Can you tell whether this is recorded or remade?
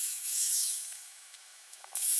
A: remade